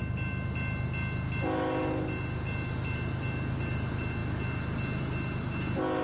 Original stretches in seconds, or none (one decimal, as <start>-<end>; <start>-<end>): 0.0-6.0